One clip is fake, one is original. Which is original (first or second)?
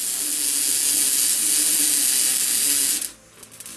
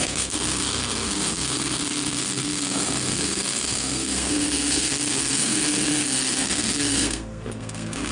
first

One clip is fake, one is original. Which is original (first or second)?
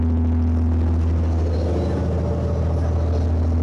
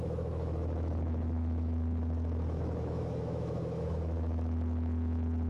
first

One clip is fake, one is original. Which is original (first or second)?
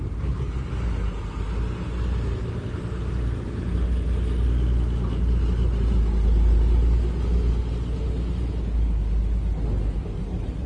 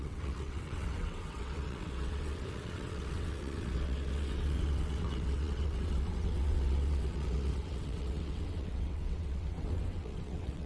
first